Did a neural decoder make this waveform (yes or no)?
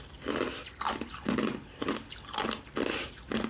no